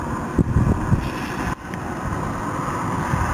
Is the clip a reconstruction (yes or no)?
no